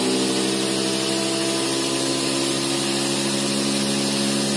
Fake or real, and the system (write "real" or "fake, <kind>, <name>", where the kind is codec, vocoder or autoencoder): real